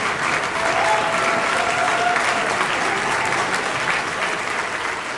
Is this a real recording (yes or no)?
yes